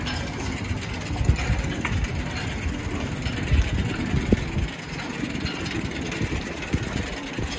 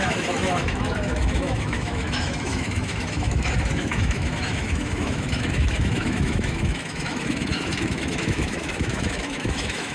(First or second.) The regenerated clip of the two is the second